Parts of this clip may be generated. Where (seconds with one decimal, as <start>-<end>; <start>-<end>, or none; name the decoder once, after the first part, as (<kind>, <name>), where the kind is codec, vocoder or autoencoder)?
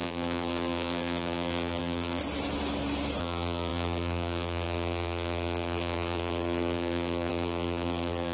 0.0-2.2 (vocoder, BigVGAN v2); 3.2-8.3